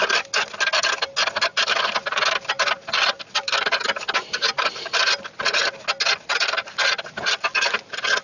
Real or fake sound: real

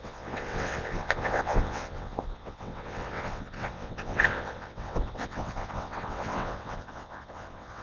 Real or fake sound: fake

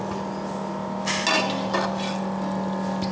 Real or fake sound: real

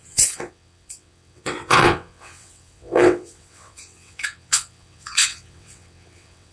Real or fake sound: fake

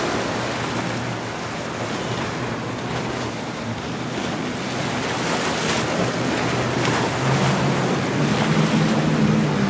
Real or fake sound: real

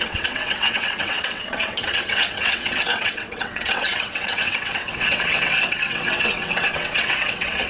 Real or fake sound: fake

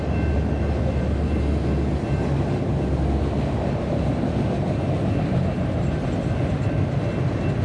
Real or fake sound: real